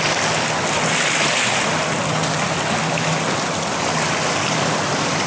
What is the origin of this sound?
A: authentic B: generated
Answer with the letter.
A